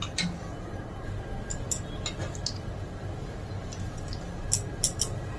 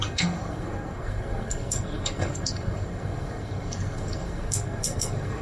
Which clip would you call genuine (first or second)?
first